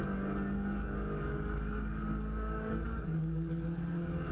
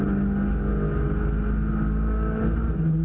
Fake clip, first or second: first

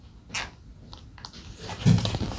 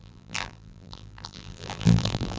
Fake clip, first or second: second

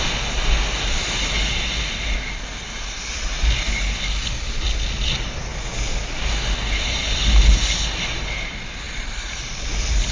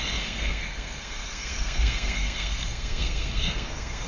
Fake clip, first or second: second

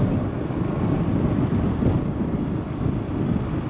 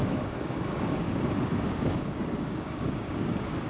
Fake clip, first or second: second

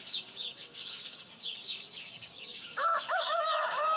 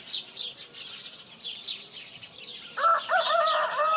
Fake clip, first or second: first